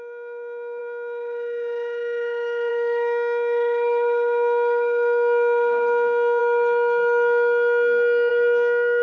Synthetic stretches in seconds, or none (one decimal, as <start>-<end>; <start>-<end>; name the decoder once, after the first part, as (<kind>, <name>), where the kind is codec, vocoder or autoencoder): 0.0-6.4 (autoencoder, DAC-VAE); 8.3-9.0